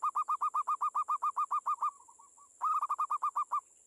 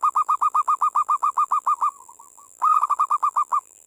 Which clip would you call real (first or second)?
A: first